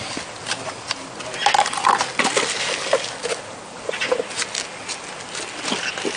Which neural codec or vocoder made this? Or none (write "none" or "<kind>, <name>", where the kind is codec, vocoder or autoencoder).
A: none